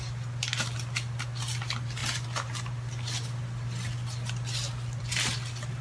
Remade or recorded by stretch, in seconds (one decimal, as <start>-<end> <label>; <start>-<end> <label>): 0.0-5.8 recorded